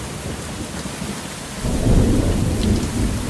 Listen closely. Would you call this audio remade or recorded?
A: recorded